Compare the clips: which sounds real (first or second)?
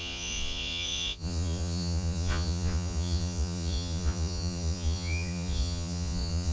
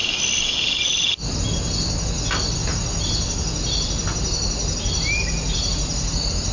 second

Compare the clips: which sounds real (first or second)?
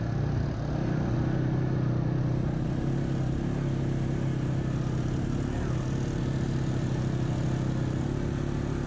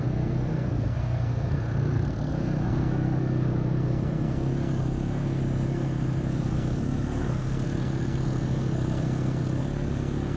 first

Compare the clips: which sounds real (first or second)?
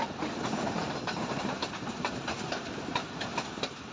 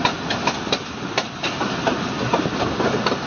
second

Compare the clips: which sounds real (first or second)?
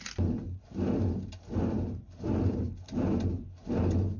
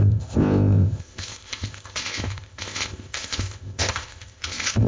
first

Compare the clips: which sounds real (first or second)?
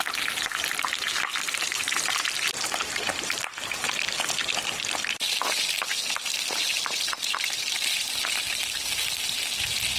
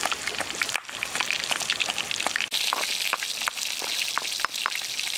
second